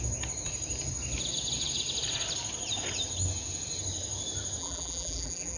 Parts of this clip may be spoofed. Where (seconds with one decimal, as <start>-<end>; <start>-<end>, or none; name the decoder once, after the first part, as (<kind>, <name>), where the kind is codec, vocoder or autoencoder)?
4.6-5.6 (vocoder, BigVGAN v2)